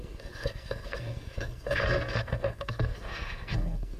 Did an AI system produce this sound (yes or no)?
yes